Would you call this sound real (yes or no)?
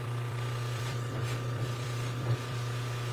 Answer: no